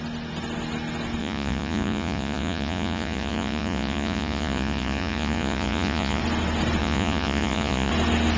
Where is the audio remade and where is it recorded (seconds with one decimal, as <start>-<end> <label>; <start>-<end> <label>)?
0.0-1.2 recorded; 1.2-6.2 remade; 6.2-6.8 recorded; 6.8-7.9 remade; 7.9-8.4 recorded